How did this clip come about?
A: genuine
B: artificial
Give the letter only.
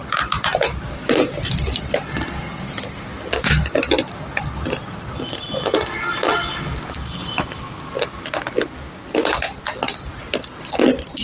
A